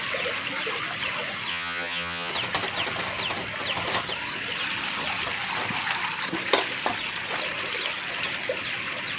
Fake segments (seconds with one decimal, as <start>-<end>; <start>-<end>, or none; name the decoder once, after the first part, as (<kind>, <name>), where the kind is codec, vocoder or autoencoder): 1.5-2.3 (vocoder, HiFi-GAN)